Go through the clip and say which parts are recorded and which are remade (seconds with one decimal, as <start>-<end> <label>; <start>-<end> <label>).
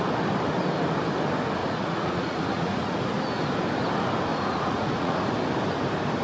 0.0-1.6 recorded; 1.6-3.0 remade; 3.0-4.3 recorded; 4.3-5.2 remade; 5.2-6.2 recorded